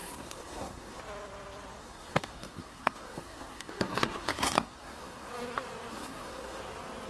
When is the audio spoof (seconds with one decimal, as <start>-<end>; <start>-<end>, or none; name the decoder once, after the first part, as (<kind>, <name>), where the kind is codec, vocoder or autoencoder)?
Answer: 0.0-1.0 (codec, SNAC); 1.8-5.3; 5.9-6.6